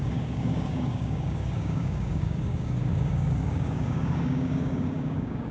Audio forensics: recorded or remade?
remade